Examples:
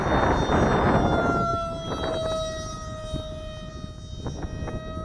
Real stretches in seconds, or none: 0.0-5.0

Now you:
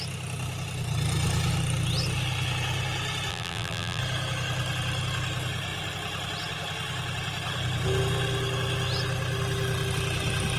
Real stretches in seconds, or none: 0.0-3.3; 4.0-10.6

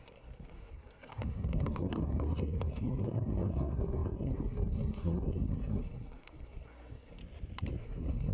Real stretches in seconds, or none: 7.2-7.8

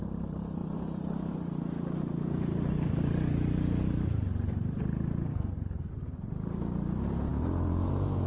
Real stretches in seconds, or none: 0.0-5.3; 5.9-8.3

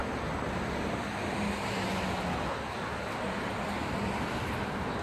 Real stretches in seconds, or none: 0.0-5.0

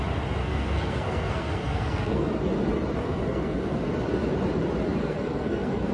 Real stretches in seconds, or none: 0.0-0.4; 2.3-3.0; 3.9-5.0